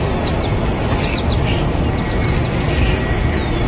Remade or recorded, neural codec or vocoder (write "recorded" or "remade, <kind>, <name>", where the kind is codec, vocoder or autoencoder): recorded